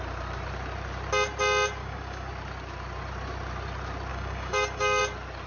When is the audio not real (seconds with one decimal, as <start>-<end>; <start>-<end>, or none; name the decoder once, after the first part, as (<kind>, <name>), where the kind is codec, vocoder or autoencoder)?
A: 1.8-2.3 (codec, DAC); 4.1-5.0